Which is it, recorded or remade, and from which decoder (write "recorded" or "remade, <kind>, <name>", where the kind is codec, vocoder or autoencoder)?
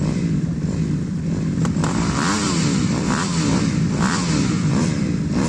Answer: remade, vocoder, BigVGAN v2